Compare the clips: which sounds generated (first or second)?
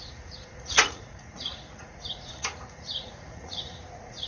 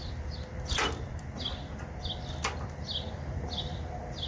first